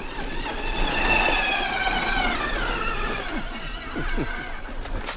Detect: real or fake real